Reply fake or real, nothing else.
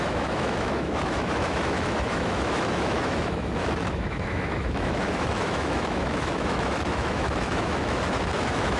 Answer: fake